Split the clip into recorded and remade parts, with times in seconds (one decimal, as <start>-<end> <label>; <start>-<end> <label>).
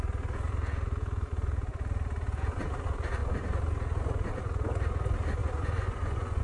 0.0-5.4 recorded; 5.4-6.4 remade